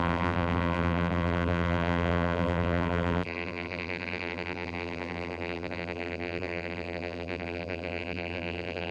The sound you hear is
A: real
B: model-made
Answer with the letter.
B